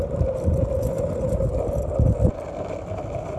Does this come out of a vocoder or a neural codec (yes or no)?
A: no